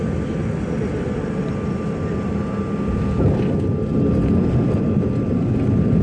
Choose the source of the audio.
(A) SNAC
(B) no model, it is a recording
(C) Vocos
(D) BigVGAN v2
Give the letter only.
B